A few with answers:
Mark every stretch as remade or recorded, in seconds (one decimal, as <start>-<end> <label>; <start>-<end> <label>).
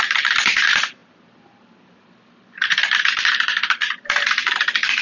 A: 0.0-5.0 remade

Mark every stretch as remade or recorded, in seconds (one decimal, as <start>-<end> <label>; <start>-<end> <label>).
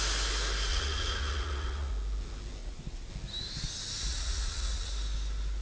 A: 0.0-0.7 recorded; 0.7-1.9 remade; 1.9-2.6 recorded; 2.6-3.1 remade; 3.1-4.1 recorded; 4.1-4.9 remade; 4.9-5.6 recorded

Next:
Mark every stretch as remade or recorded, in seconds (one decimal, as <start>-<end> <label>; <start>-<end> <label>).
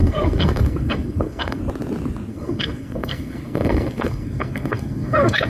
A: 0.0-1.6 remade; 1.6-2.3 recorded; 2.3-5.5 remade